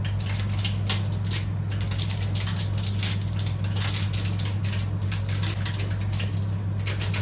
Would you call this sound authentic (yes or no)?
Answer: yes